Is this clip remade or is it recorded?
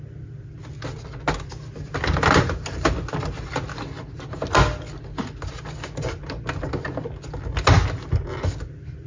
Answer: recorded